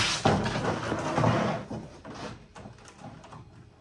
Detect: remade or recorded recorded